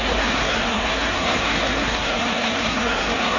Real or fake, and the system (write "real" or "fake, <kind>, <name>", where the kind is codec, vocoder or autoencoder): fake, codec, SNAC